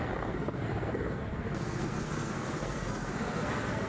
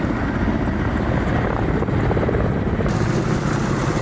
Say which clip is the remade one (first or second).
first